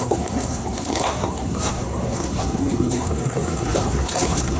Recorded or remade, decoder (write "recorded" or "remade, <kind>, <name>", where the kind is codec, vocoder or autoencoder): remade, codec, SNAC